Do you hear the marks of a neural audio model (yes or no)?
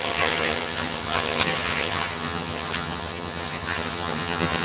yes